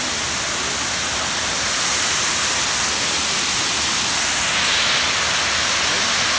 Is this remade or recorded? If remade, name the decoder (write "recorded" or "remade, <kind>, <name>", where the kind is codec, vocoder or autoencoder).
recorded